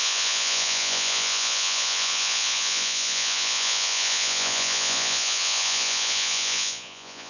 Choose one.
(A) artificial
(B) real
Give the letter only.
A